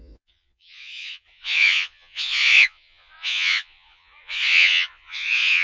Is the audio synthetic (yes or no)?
yes